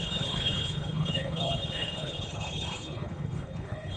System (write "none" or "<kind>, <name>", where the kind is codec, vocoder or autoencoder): codec, HILCodec